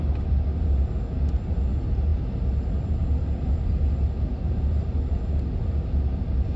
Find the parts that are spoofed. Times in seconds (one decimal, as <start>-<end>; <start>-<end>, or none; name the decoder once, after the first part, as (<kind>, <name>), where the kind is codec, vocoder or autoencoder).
none